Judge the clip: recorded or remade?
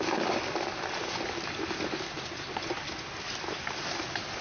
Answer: recorded